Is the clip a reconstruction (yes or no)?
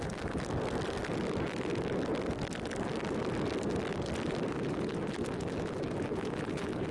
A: no